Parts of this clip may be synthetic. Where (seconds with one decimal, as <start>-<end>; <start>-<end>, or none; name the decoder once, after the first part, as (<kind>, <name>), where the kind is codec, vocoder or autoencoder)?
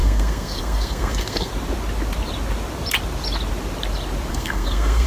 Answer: 0.0-1.5 (codec, SNAC); 4.3-5.1